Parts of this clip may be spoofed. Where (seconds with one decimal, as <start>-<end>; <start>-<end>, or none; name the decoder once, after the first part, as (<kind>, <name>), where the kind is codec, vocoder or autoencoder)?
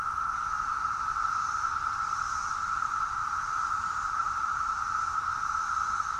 3.2-4.9 (vocoder, BigVGAN v2)